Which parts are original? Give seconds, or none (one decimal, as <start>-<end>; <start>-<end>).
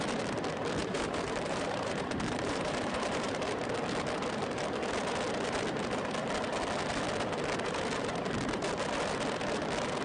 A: 0.0-0.8; 3.5-10.0